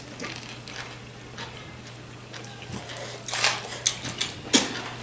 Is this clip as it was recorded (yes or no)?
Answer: yes